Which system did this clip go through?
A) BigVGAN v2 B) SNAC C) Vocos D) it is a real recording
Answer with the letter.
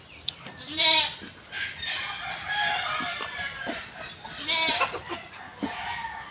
D